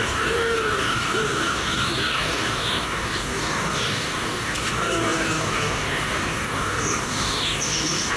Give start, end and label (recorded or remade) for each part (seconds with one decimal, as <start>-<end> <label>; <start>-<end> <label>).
0.0-8.2 remade